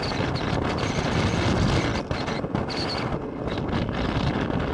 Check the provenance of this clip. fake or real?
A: real